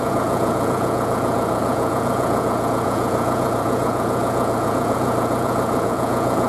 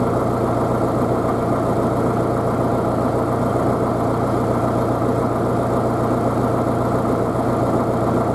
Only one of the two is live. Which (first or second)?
second